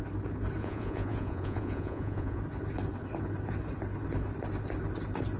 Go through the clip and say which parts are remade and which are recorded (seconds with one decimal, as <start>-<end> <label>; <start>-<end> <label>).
0.0-0.6 recorded; 0.6-2.4 remade; 2.4-5.4 recorded